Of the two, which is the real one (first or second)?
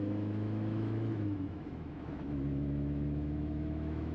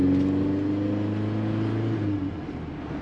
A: second